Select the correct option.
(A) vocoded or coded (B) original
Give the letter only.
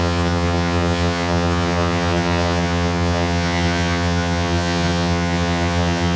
A